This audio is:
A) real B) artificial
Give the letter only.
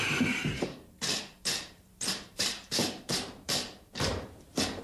B